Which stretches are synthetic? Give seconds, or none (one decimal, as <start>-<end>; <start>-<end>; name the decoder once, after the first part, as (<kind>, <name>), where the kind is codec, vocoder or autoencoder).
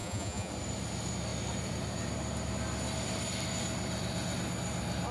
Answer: 0.0-0.5 (vocoder, Vocos)